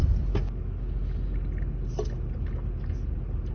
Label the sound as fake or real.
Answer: real